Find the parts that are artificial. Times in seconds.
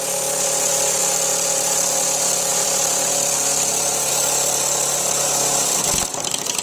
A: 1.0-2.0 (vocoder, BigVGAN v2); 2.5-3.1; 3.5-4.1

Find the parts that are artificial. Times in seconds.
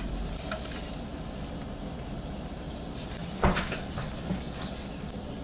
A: 0.0-1.1 (vocoder, BigVGAN v2); 1.8-3.2; 3.9-5.4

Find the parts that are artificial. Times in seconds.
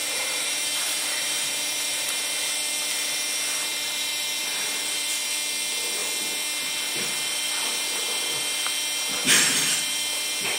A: 0.0-2.2 (vocoder, BigVGAN v2); 3.7-5.3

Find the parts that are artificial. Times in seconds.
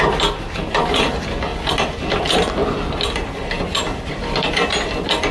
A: none